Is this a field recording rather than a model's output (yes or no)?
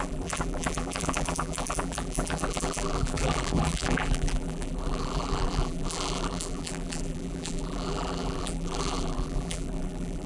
no